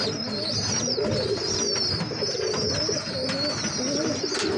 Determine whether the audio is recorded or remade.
recorded